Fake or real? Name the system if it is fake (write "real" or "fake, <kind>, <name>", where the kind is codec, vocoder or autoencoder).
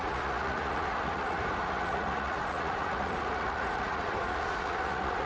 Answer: fake, vocoder, Vocos